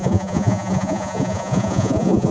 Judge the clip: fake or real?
fake